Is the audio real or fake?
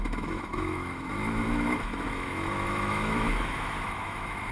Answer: fake